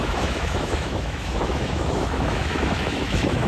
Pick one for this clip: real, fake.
fake